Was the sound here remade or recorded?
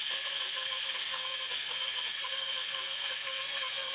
remade